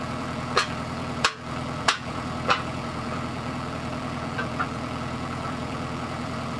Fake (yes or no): yes